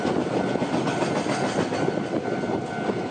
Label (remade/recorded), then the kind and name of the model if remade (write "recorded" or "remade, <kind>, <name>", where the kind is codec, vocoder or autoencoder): recorded